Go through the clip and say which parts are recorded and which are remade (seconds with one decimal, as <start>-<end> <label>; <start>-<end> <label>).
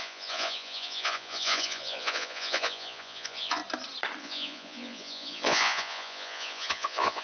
0.0-3.6 remade; 3.6-4.2 recorded; 4.2-7.2 remade